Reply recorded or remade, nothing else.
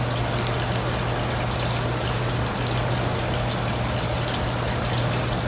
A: recorded